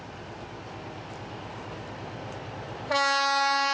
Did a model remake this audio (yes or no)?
no